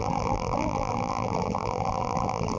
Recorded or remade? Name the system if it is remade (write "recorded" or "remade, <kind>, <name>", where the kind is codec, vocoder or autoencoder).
remade, vocoder, BigVGAN v2